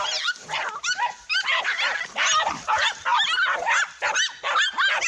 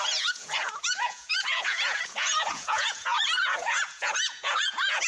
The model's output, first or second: second